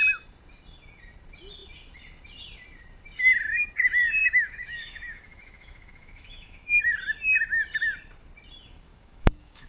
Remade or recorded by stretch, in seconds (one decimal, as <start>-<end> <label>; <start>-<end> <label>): 0.0-4.2 recorded; 4.2-6.8 remade; 6.8-8.9 recorded; 8.9-9.7 remade